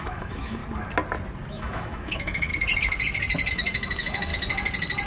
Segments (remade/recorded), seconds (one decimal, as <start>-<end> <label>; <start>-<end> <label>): 0.0-0.6 remade; 0.6-1.5 recorded; 1.5-2.5 remade; 2.5-3.5 recorded; 3.5-4.3 remade; 4.3-5.1 recorded